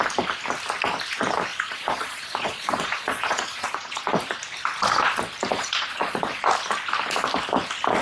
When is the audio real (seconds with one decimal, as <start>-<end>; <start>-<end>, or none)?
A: 0.0-1.5; 4.0-5.5; 6.4-8.0